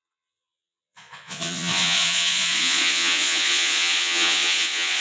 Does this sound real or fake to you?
fake